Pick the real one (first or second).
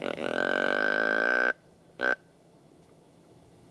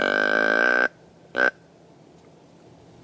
second